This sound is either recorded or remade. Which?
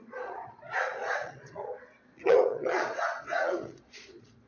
remade